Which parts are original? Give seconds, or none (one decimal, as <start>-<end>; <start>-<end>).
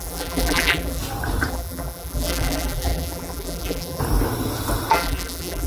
1.0-1.5; 4.0-4.9